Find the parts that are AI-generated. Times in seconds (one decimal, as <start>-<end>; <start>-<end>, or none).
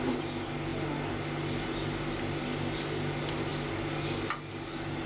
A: none